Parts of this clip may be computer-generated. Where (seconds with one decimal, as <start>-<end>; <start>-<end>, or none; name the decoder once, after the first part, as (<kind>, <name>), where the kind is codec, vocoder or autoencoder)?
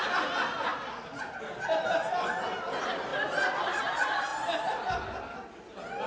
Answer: none